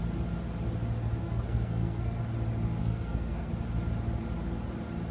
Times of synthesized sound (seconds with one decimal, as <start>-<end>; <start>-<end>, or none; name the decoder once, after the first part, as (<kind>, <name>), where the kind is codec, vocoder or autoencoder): 1.2-2.2 (codec, SNAC); 2.8-3.5